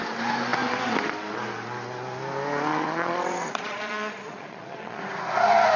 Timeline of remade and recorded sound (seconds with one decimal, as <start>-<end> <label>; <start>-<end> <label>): 0.0-2.7 recorded; 2.7-5.0 remade; 5.0-5.8 recorded